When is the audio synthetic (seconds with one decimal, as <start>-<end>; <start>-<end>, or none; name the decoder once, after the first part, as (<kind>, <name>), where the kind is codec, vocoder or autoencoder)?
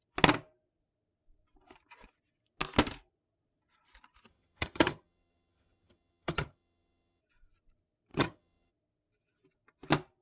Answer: 4.3-7.2 (vocoder, HiFi-GAN); 8.1-8.7